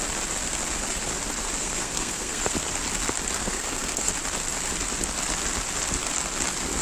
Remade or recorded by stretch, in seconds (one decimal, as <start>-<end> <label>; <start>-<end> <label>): 0.0-1.6 recorded; 1.6-2.5 remade; 2.5-3.4 recorded; 3.4-4.1 remade; 4.1-6.8 recorded